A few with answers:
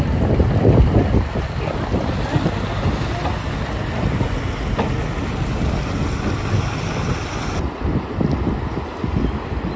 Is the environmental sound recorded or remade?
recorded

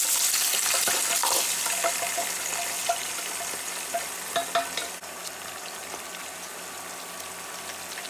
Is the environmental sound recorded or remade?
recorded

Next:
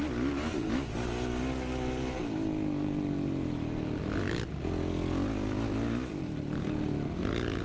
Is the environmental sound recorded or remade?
recorded